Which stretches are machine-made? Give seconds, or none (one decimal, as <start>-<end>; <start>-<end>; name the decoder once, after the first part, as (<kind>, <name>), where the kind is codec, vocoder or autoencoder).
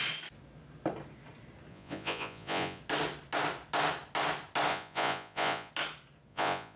1.7-2.8 (vocoder, Vocos); 4.7-5.7; 6.3-6.8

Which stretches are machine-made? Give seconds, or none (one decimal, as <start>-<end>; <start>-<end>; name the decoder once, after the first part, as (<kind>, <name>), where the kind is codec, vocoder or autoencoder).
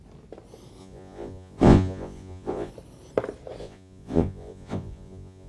0.8-2.7 (vocoder, Vocos); 3.6-5.5